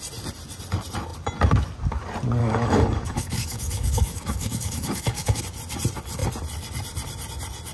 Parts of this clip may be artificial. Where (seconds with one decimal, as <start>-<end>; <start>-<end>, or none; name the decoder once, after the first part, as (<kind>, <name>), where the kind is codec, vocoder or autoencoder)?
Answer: 2.4-5.4 (codec, DAC)